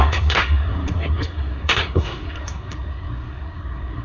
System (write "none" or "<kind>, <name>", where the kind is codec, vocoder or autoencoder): codec, SNAC